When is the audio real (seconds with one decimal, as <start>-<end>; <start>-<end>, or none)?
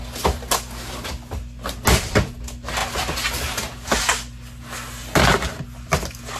0.0-6.4